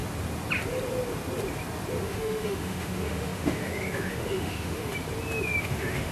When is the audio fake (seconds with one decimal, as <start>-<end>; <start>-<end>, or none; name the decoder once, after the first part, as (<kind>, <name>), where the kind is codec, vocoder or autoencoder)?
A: 2.0-4.9 (autoencoder, DAC-VAE); 5.6-6.1